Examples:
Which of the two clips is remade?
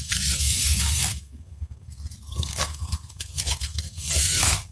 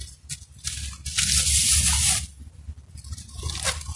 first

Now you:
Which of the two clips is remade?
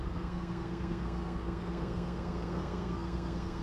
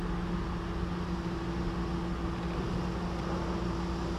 first